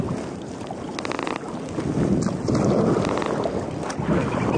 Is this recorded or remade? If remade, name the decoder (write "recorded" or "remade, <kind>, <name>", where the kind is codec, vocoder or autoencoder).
recorded